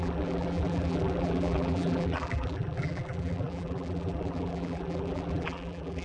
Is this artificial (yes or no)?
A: yes